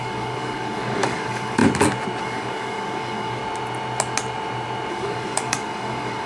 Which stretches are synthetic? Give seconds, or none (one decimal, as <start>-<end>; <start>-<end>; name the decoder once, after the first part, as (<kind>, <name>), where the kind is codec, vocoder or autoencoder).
0.0-1.6 (codec, DAC); 2.2-3.4; 4.9-6.3